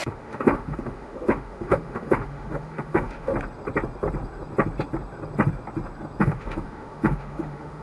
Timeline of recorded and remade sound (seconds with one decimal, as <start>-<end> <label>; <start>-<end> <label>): 0.0-3.3 remade; 3.3-6.2 recorded; 6.2-7.8 remade